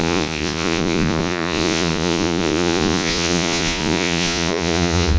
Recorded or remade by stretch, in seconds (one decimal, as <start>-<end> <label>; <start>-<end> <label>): 0.0-5.2 remade